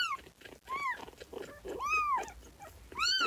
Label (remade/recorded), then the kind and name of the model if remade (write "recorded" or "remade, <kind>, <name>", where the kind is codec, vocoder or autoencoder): recorded